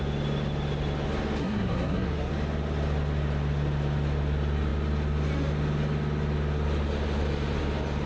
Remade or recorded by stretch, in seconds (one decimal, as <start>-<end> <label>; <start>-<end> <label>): 0.0-1.4 recorded; 1.4-2.3 remade; 2.3-8.1 recorded